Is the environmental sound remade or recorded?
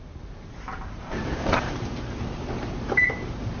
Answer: remade